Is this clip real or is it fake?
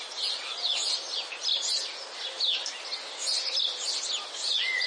real